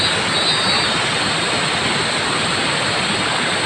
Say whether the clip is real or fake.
real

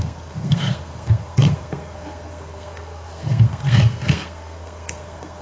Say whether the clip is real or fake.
fake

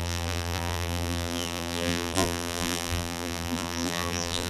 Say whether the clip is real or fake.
fake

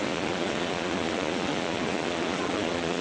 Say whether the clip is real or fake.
fake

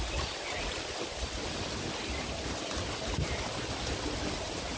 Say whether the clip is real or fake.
fake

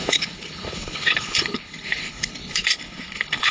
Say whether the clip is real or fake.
fake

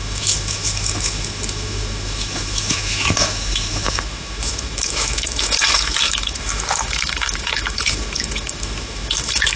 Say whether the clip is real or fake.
fake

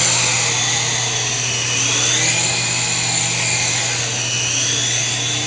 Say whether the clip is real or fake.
real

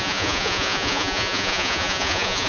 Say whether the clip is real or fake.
fake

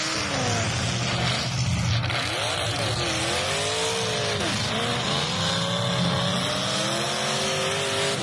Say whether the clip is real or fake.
real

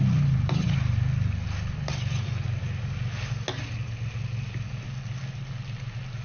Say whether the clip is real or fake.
real